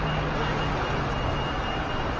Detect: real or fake real